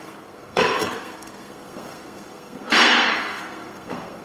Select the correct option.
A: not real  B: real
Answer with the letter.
A